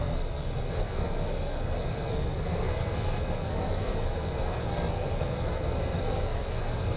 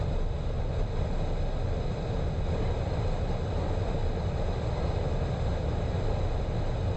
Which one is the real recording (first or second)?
second